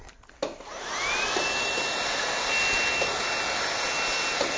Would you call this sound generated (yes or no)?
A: no